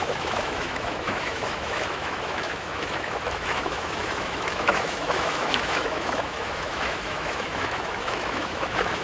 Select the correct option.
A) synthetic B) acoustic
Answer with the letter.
A